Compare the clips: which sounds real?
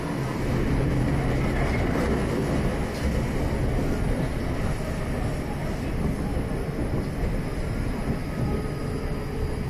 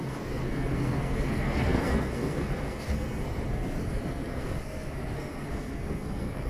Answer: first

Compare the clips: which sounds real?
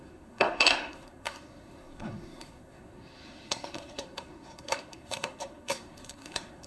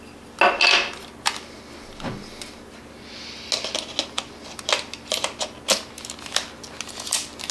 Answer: second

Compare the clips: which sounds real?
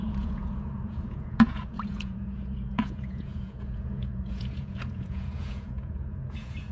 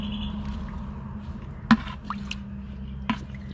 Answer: second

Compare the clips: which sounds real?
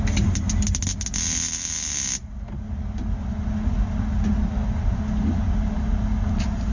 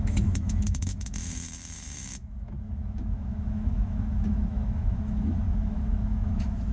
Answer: first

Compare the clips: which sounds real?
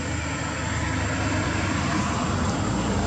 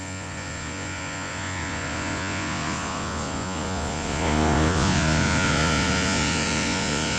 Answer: first